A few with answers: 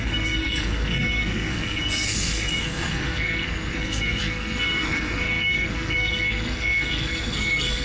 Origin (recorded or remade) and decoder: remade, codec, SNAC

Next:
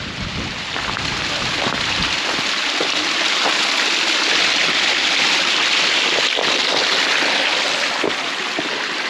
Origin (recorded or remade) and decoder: recorded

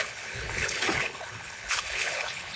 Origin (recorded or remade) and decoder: remade, codec, HILCodec